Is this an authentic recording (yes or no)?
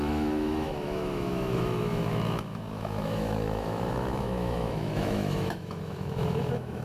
no